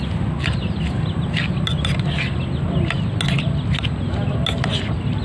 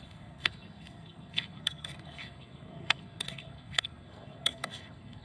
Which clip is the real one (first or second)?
first